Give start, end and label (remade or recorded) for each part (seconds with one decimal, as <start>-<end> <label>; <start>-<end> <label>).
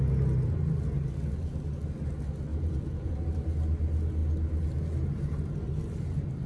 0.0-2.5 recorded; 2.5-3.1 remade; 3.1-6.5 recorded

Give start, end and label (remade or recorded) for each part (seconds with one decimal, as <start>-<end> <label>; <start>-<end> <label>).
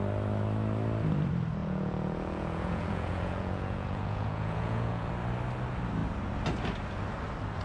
0.0-1.6 recorded; 1.6-5.1 remade; 5.1-7.6 recorded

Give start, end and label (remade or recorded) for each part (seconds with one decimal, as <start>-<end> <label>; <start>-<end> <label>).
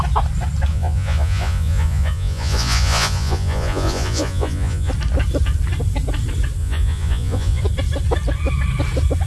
0.0-0.7 recorded; 0.7-4.9 remade; 4.9-6.6 recorded; 6.6-7.6 remade; 7.6-9.3 recorded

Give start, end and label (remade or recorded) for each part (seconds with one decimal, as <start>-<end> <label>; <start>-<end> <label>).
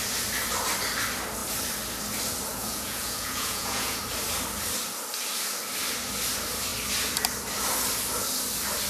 0.0-2.5 recorded; 2.5-4.0 remade; 4.0-8.9 recorded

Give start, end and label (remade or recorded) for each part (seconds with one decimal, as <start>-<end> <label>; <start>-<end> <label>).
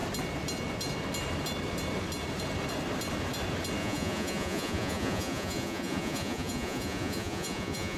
0.0-3.8 recorded; 3.8-8.0 remade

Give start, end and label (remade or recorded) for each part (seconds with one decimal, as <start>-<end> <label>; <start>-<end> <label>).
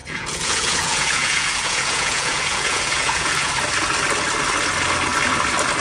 0.0-3.5 remade; 3.5-5.8 recorded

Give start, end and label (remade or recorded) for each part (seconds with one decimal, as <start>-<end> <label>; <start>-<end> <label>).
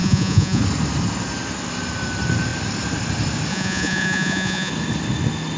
0.0-0.6 remade; 0.6-3.5 recorded; 3.5-4.7 remade; 4.7-5.6 recorded